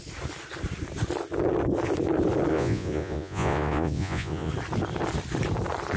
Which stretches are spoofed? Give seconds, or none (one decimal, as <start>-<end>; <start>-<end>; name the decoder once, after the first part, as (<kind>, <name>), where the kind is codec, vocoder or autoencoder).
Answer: 2.5-4.5 (vocoder, Vocos)

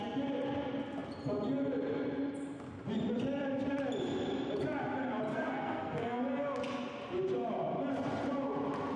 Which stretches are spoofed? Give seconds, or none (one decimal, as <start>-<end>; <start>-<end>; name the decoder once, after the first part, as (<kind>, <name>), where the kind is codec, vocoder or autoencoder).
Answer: 5.3-6.2 (codec, SNAC)

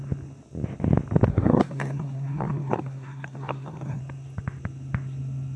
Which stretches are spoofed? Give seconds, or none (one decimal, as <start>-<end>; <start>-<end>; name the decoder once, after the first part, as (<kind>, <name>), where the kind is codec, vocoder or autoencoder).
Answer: 1.3-4.0 (codec, SNAC)

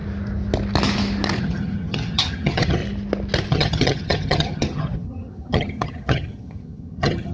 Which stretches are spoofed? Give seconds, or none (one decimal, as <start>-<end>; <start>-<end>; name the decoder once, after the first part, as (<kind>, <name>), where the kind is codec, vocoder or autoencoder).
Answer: 1.4-2.8 (vocoder, HiFi-GAN); 3.5-7.3